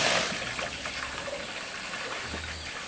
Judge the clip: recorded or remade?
recorded